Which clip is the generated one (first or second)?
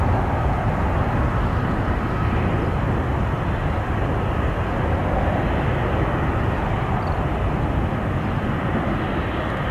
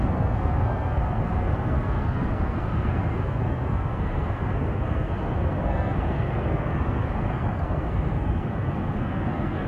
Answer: second